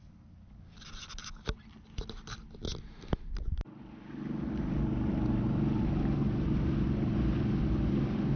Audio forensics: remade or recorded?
recorded